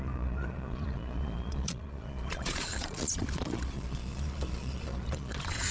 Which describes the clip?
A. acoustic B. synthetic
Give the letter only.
B